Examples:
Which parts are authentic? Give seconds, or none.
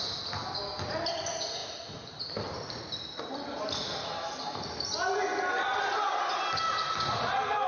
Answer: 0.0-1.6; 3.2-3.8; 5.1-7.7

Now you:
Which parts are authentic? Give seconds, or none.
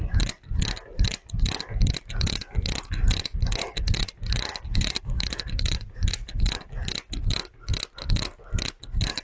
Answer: 0.0-4.5; 6.1-9.2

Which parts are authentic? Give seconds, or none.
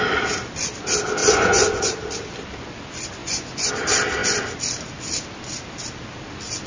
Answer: 0.0-1.2; 1.8-3.2; 3.7-6.7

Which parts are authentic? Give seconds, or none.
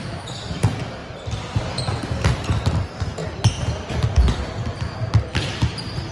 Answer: 0.0-1.0; 1.8-6.1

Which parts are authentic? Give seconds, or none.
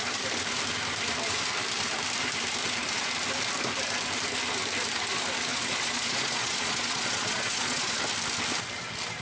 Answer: 0.0-5.5; 8.0-9.2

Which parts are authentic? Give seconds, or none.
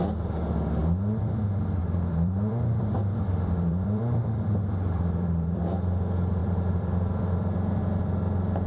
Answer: 0.0-0.8; 1.4-1.8; 5.6-6.4; 7.8-8.7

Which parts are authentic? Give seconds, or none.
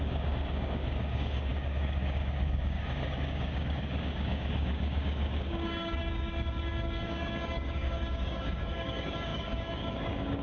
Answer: none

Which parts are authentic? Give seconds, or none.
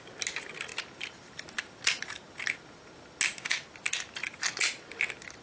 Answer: 0.0-5.4